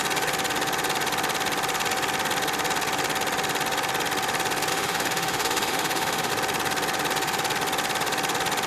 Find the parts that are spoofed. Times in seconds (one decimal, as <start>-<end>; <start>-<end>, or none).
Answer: 4.7-6.3